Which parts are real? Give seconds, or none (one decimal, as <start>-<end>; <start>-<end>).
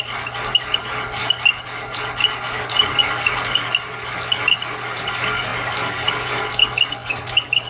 none